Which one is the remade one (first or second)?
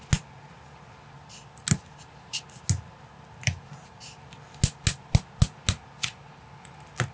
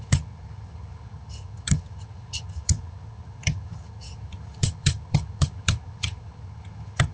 second